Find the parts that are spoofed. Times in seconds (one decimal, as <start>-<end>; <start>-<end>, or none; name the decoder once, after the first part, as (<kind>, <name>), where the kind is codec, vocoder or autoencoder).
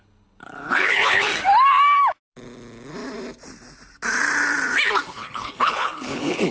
0.0-1.3 (codec, HILCodec); 5.0-6.5